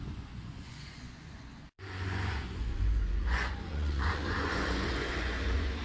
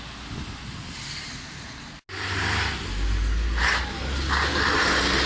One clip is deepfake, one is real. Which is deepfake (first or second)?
first